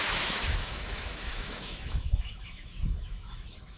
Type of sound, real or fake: fake